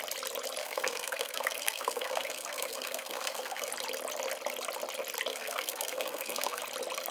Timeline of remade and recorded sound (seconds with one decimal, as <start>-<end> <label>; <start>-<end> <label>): 0.0-0.6 recorded; 0.6-3.7 remade; 3.7-5.3 recorded; 5.3-6.6 remade; 6.6-7.1 recorded

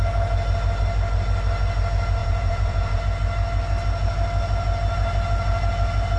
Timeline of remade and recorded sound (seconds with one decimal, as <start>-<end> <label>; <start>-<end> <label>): 0.0-2.2 recorded; 2.2-3.0 remade; 3.0-6.2 recorded

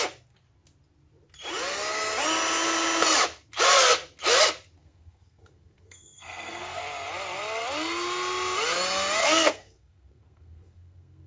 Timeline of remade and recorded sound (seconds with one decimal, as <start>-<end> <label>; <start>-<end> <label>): 0.0-4.8 recorded; 4.8-6.8 remade; 6.8-9.2 recorded; 9.2-11.3 remade

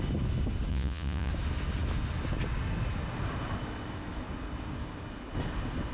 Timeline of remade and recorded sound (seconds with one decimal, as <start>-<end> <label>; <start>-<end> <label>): 0.0-0.7 recorded; 0.7-1.3 remade; 1.3-5.9 recorded